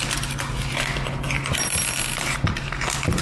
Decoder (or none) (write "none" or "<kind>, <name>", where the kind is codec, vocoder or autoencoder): none